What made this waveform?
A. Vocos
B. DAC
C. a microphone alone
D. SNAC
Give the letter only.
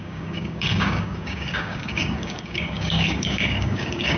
B